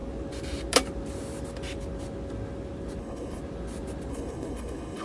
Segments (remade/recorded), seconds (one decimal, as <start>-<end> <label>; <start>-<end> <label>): 0.0-3.0 recorded; 3.0-3.4 remade; 3.4-4.1 recorded; 4.1-5.0 remade